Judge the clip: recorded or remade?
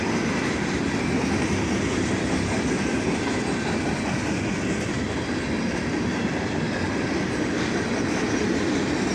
recorded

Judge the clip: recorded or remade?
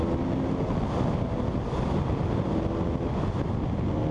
recorded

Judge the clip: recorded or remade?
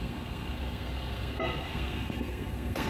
remade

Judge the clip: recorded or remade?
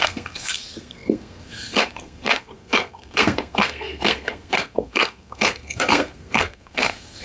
remade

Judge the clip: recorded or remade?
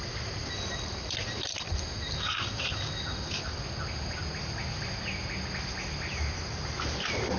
recorded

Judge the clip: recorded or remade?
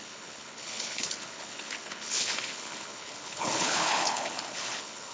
remade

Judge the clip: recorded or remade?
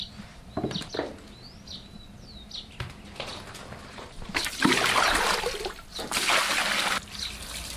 recorded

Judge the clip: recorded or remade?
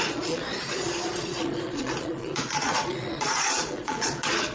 remade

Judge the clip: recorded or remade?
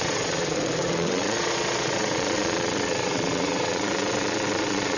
remade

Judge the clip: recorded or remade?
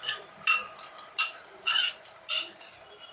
remade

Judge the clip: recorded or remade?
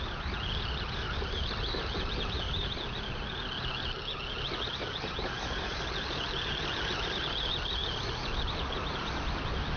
recorded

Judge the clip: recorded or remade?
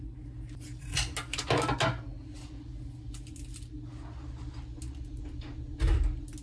recorded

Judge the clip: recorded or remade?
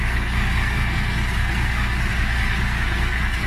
remade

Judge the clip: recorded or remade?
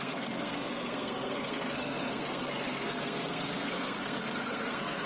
remade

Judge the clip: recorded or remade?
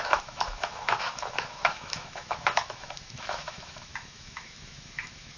remade